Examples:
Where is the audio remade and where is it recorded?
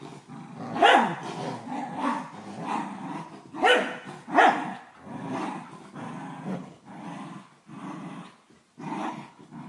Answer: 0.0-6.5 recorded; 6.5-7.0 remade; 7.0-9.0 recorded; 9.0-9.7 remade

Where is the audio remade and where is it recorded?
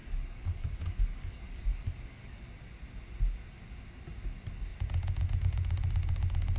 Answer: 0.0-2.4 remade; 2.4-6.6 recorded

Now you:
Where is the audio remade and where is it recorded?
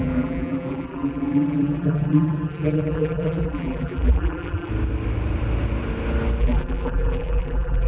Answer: 0.0-4.7 remade; 4.7-6.4 recorded; 6.4-7.9 remade